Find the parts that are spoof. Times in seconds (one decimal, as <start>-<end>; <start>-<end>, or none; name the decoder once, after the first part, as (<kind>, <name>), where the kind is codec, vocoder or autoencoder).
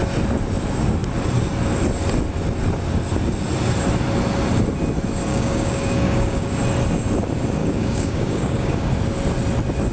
5.3-6.5 (codec, DAC); 7.6-8.9